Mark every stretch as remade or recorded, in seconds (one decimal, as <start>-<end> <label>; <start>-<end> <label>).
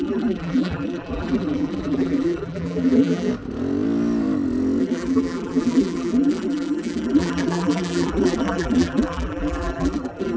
0.0-3.3 remade; 3.3-4.8 recorded; 4.8-10.4 remade